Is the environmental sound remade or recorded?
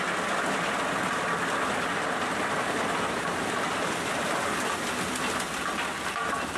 recorded